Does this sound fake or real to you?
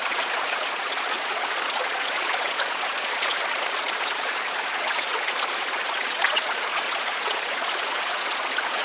fake